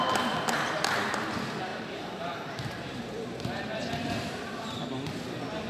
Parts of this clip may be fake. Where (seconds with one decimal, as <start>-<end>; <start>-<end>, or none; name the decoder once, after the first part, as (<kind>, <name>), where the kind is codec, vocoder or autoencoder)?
1.7-4.8 (vocoder, BigVGAN v2)